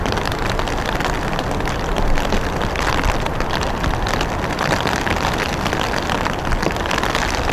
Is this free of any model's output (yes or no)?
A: yes